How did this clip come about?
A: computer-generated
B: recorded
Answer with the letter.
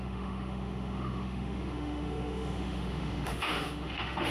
A